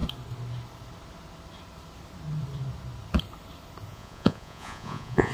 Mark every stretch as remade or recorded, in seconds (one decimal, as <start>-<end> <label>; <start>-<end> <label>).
0.0-3.9 recorded; 3.9-5.3 remade